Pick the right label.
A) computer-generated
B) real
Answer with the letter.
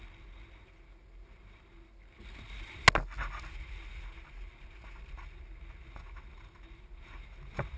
B